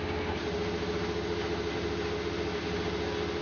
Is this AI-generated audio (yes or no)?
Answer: no